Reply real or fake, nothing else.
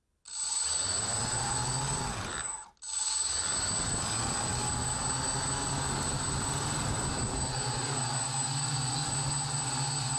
real